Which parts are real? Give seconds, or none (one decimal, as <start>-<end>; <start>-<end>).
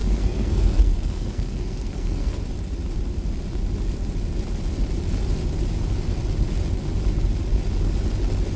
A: 2.4-8.6